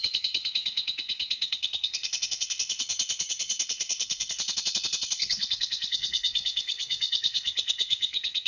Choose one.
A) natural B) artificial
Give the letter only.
B